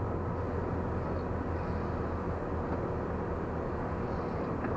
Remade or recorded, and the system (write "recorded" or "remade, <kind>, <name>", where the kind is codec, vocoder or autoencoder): recorded